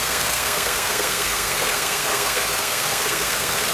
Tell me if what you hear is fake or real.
fake